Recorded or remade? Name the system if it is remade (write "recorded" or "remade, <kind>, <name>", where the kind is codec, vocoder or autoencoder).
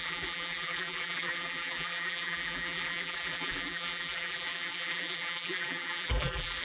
remade, vocoder, BigVGAN v2